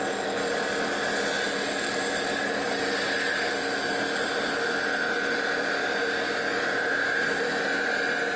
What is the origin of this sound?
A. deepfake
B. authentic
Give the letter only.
B